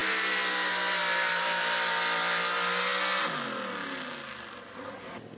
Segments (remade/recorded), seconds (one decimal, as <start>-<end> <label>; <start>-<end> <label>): 0.0-5.4 recorded